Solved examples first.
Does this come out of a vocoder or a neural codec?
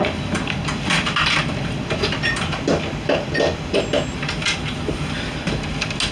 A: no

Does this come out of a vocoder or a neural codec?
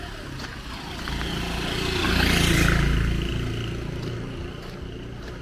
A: no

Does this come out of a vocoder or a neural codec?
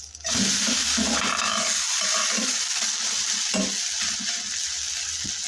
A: no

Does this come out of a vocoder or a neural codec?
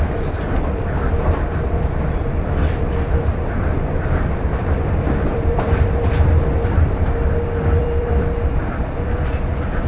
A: yes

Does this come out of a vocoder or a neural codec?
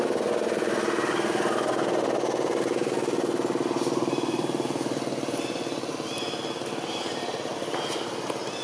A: no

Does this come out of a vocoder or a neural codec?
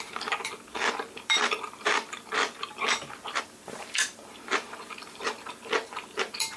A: yes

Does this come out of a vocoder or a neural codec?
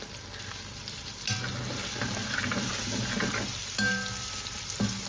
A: no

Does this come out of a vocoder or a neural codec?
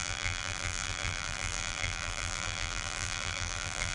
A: yes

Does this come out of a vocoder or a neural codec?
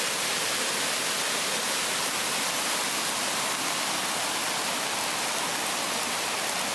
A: no